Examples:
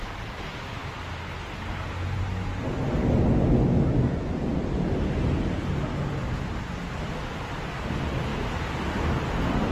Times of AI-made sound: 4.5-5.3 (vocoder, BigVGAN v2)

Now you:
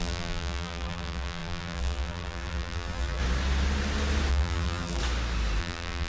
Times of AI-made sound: 0.0-3.2 (vocoder, BigVGAN v2); 4.3-5.0; 5.6-6.1

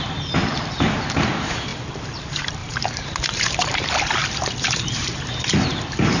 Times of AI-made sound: 0.0-1.7 (vocoder, BigVGAN v2); 2.2-6.2